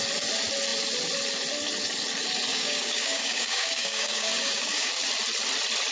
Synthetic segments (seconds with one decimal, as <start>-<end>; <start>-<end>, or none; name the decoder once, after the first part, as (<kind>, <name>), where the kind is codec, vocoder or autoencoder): 2.5-5.1 (codec, DAC)